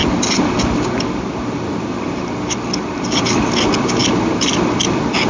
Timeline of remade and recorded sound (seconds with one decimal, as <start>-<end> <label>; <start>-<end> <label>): 0.0-5.3 recorded